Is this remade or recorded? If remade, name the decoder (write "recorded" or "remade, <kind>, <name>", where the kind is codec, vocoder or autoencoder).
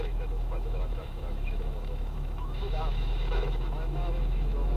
remade, autoencoder, DAC-VAE